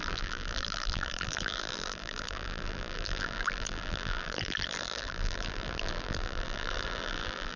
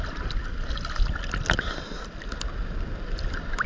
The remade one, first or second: first